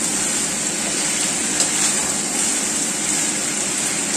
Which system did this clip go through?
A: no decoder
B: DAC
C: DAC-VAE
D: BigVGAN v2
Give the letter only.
A